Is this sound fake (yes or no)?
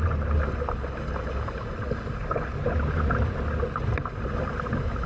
no